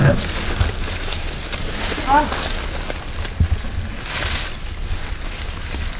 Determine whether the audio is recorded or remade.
recorded